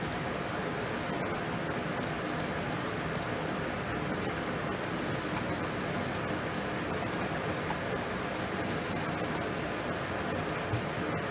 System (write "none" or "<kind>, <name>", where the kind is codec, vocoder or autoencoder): none